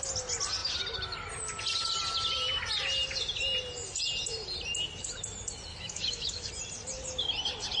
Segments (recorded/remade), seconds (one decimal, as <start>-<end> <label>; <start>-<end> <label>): 0.0-5.7 recorded; 5.7-6.5 remade; 6.5-7.8 recorded